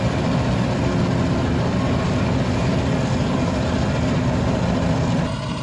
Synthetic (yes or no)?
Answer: no